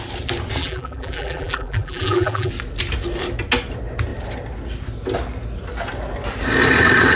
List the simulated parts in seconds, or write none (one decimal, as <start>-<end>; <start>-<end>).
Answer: 0.6-2.5